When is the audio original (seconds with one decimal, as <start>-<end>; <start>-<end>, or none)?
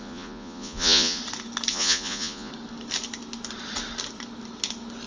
1.2-1.7; 2.5-5.1